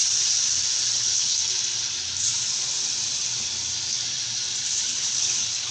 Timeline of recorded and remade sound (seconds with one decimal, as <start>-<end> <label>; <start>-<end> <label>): 0.0-1.0 recorded; 1.0-1.4 remade; 1.4-4.8 recorded; 4.8-5.7 remade